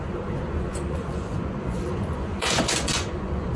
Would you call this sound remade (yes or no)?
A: yes